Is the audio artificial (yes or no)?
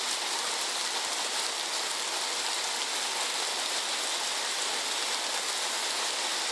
no